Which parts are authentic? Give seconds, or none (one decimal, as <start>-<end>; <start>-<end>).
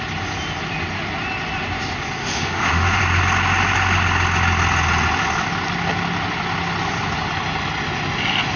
0.0-2.2; 3.0-8.6